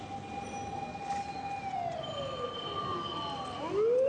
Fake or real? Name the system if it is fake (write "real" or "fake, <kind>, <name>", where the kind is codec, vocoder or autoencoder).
real